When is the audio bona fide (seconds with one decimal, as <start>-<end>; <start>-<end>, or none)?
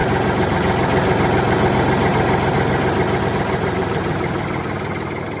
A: 0.0-3.2